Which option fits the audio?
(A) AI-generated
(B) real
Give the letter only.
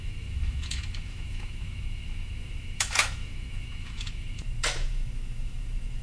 A